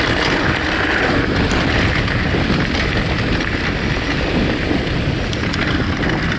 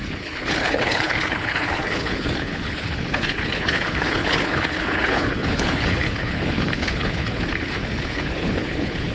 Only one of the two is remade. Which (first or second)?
second